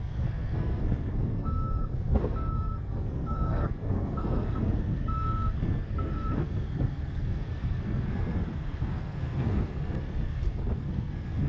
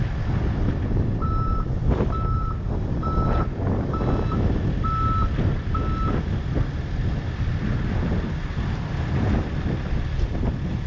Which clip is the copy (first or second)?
first